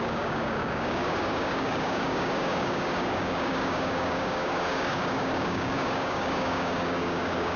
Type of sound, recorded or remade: remade